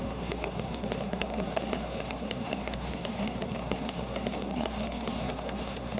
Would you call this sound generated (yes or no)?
yes